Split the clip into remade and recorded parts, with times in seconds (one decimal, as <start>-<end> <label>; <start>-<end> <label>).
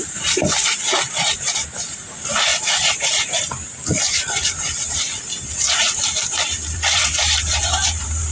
0.0-3.5 remade; 3.5-4.4 recorded; 4.4-8.3 remade